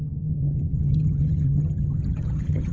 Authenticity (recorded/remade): remade